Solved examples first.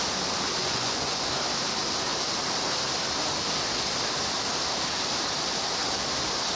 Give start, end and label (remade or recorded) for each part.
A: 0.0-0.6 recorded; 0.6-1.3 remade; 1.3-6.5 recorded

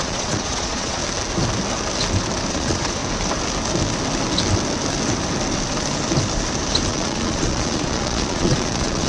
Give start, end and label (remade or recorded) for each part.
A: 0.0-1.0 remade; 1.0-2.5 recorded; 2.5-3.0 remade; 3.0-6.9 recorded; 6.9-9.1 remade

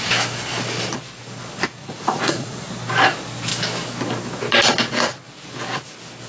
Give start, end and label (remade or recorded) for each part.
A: 0.0-1.8 recorded; 1.8-2.7 remade; 2.7-6.3 recorded